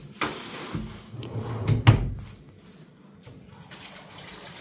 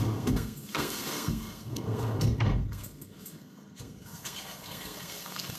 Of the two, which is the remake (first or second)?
second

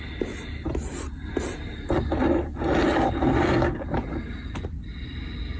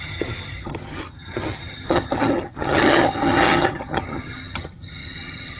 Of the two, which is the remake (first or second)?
second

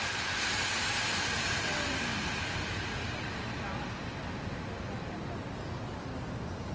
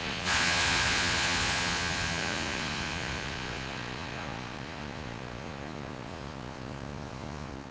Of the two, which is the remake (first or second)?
second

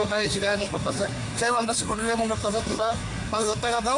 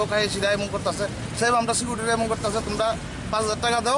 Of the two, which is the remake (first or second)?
first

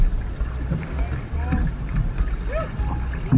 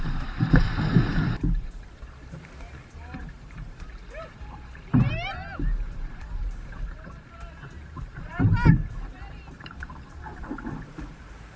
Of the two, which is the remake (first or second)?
second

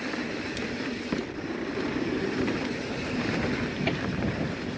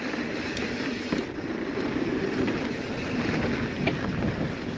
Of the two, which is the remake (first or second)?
first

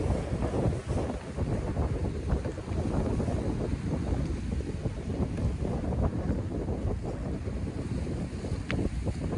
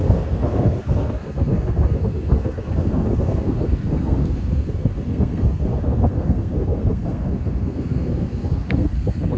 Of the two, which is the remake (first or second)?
second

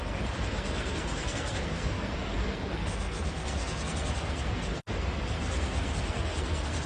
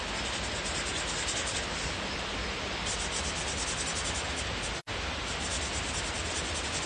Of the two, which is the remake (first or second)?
first